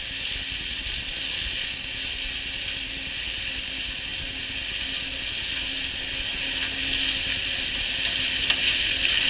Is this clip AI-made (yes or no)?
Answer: no